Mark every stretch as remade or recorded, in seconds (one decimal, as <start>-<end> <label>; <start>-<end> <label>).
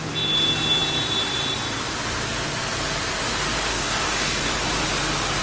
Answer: 0.0-3.7 recorded; 3.7-4.5 remade; 4.5-5.4 recorded